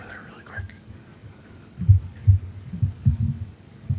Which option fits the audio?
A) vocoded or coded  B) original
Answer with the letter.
A